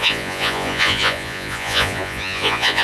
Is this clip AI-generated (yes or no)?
yes